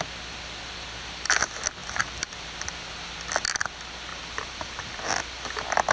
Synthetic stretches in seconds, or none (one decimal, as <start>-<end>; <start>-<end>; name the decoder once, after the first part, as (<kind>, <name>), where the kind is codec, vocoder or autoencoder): 1.8-3.2 (vocoder, BigVGAN v2); 4.1-5.0